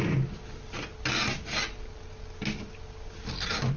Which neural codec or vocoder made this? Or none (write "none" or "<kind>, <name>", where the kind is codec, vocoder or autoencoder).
none